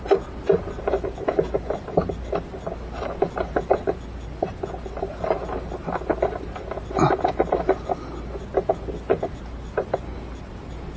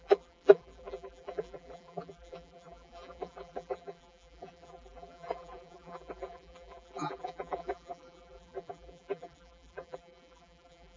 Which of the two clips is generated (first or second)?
second